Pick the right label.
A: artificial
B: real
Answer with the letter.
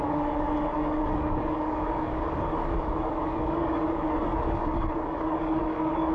A